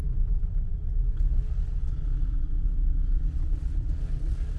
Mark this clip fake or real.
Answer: fake